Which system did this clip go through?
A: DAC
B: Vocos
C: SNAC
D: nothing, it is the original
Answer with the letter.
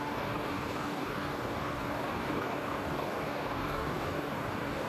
A